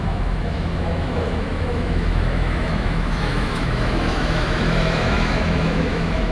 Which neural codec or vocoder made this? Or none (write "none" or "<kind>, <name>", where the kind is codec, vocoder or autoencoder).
autoencoder, DAC-VAE